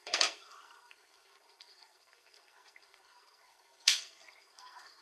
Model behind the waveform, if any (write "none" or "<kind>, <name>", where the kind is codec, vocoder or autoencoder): codec, SNAC